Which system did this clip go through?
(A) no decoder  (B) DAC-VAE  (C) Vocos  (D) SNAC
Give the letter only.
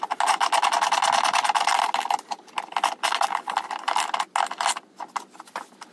A